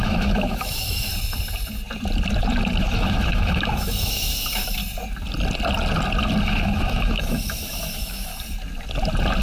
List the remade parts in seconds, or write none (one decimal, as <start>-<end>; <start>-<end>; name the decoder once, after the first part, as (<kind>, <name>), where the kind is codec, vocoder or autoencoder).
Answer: 0.0-1.1 (autoencoder, DAC-VAE); 2.8-4.8; 6.4-8.3